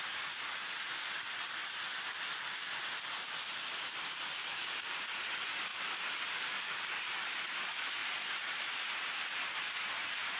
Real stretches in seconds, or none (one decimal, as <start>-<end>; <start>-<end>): 0.0-4.4; 5.2-10.4